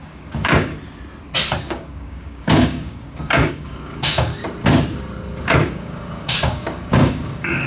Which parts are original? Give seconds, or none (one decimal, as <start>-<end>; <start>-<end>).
0.7-1.6; 4.3-5.4